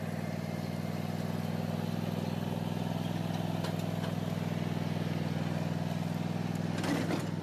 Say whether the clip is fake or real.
real